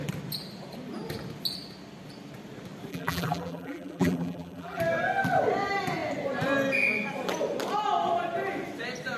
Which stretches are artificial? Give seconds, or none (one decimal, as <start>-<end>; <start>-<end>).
2.9-4.8

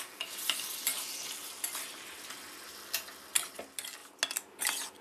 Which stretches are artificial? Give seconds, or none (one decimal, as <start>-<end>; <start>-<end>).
none

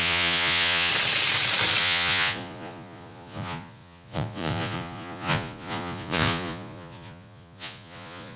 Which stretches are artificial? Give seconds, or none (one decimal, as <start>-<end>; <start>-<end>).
0.0-0.9; 1.8-8.4

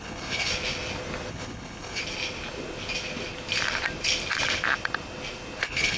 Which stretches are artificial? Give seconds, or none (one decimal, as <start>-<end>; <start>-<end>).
0.0-0.5; 1.3-2.0; 5.6-6.0